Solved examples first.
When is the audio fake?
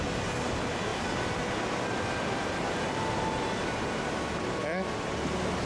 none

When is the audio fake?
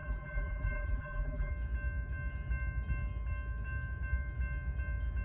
0.0-1.5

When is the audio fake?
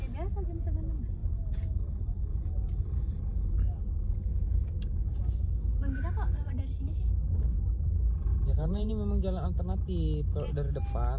8.3-8.9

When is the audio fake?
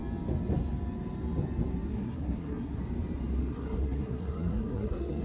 1.9-2.8; 3.4-5.2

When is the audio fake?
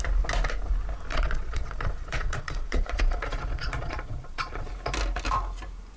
1.1-4.7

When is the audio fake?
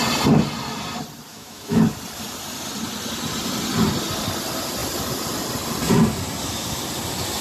1.3-1.8